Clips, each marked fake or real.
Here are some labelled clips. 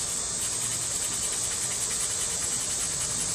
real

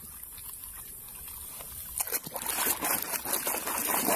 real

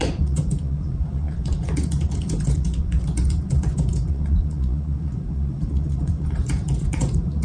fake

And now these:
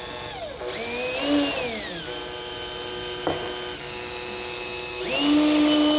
real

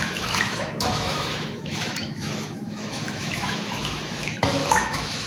fake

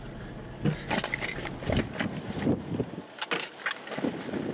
real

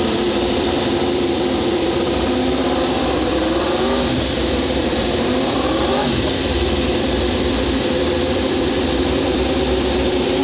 fake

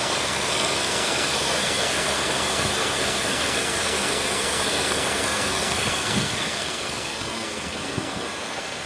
fake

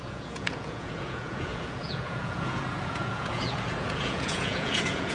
fake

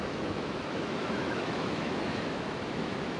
fake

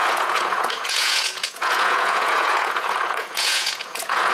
fake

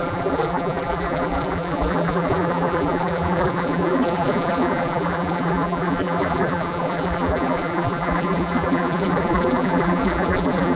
fake